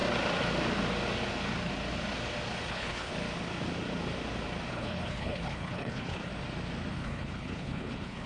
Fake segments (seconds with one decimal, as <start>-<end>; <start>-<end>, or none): 2.7-3.1; 4.7-6.3; 6.9-8.3